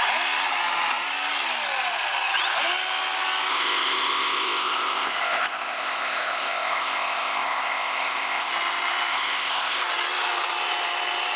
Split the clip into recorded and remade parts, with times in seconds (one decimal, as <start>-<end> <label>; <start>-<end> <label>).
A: 0.0-3.5 recorded; 3.5-8.5 remade; 8.5-9.1 recorded; 9.1-9.8 remade; 9.8-11.4 recorded